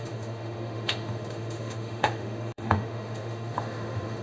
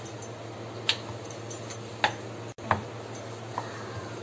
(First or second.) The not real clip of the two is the first